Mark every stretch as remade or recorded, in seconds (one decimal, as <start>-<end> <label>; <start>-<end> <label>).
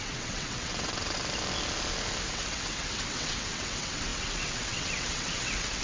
0.0-1.2 remade; 1.2-2.3 recorded; 2.3-5.8 remade